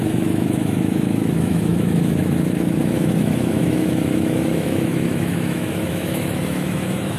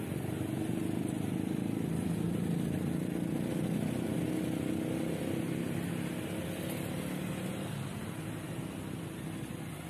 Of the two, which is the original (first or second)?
second